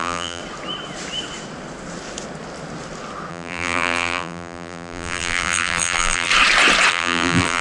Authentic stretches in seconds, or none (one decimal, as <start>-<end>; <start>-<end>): 0.4-3.3; 6.3-6.9